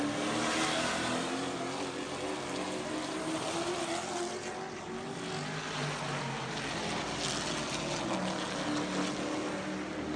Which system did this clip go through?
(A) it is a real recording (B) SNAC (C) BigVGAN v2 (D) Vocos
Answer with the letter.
A